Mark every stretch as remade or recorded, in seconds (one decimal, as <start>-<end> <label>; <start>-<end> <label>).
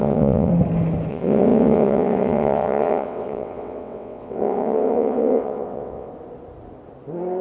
0.0-0.5 remade; 0.5-1.1 recorded; 1.1-6.1 remade; 6.1-7.4 recorded